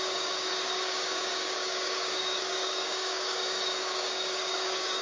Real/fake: fake